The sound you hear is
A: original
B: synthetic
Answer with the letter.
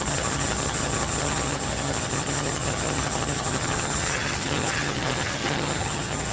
B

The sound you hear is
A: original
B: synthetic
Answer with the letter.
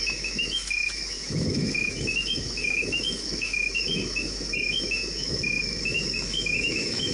B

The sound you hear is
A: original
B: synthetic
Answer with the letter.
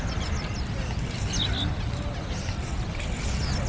A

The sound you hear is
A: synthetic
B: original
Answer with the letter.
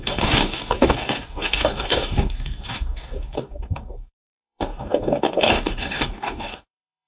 A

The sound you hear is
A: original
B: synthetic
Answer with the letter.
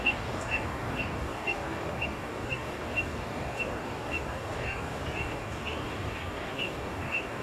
B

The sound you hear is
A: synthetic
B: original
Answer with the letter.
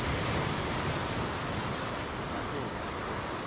B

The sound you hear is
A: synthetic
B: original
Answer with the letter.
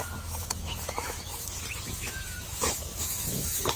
A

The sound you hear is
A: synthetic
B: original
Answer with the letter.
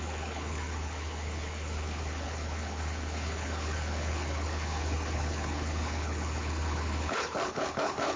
A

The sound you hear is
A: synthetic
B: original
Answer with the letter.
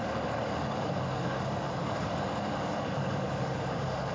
A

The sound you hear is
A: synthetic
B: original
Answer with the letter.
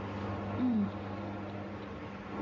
B